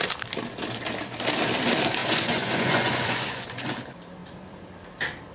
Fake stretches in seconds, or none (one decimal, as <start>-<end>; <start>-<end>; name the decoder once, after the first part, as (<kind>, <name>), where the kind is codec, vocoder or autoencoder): 2.0-3.6 (vocoder, Vocos)